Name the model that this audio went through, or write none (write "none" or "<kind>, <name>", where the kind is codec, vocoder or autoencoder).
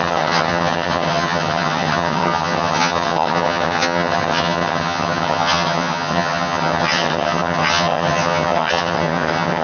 vocoder, HiFi-GAN